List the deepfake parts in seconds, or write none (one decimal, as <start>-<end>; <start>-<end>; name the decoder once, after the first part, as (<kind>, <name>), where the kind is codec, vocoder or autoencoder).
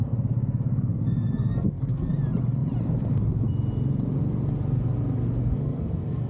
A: 0.9-2.1 (codec, SNAC); 5.4-6.3